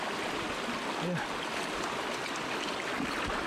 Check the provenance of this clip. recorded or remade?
recorded